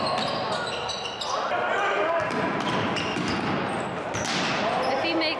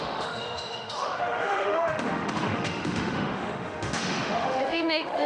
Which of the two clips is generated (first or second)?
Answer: second